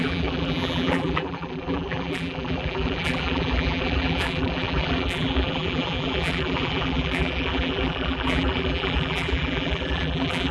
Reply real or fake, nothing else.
fake